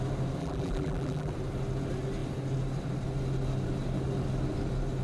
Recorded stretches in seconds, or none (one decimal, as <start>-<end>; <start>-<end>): 0.0-0.4; 1.3-5.0